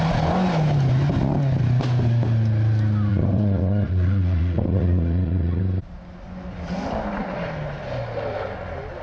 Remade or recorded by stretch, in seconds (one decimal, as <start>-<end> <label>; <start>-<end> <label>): 0.0-3.1 recorded; 3.1-5.6 remade; 5.6-9.0 recorded